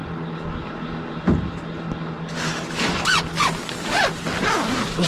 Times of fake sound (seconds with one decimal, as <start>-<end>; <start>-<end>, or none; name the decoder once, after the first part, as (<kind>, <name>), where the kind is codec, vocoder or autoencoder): none